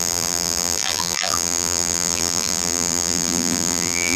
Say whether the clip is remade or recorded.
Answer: remade